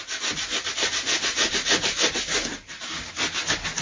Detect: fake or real real